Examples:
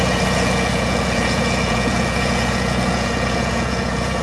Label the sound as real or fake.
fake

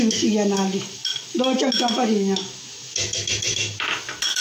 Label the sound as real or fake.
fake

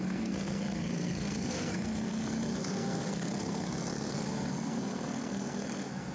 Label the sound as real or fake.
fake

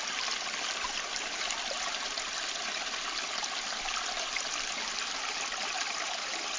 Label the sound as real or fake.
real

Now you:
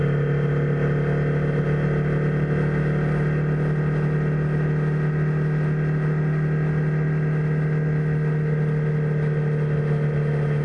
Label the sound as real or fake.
real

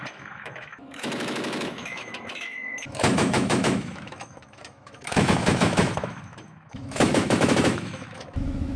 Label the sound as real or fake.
fake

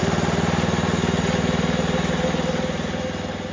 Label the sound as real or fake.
real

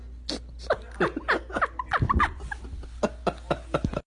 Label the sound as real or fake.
real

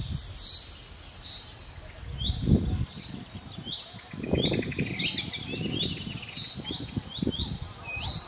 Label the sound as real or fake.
fake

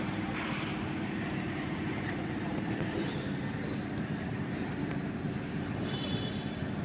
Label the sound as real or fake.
fake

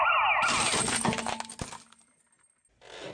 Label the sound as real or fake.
real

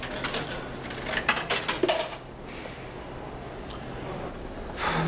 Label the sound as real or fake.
real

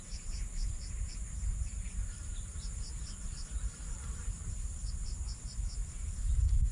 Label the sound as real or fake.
fake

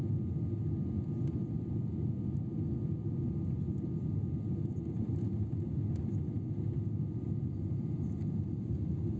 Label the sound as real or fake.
real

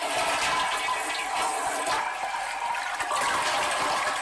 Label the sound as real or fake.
real